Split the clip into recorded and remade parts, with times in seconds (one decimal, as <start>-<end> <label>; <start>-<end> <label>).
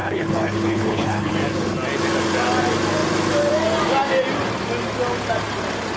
0.0-1.3 remade; 1.3-6.0 recorded